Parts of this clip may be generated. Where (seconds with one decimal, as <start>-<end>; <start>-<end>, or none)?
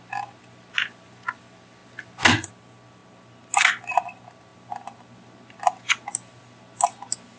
none